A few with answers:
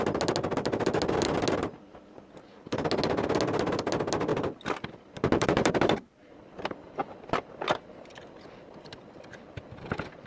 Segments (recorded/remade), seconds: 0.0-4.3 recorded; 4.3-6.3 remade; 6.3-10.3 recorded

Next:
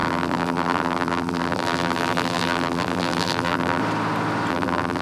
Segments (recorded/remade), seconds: 0.0-3.8 remade; 3.8-4.5 recorded; 4.5-5.0 remade

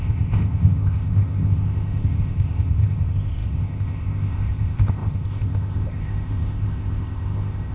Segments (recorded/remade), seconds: 0.0-7.7 remade

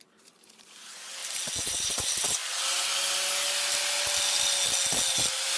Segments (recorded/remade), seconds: 0.0-1.2 remade; 1.2-1.7 recorded; 1.7-2.4 remade; 2.4-5.6 recorded